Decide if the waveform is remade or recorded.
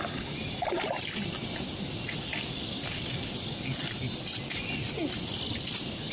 recorded